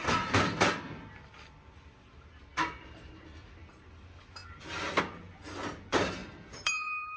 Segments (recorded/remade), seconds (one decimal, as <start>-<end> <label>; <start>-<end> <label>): 0.0-2.5 recorded; 2.5-3.8 remade; 3.8-6.2 recorded; 6.2-7.2 remade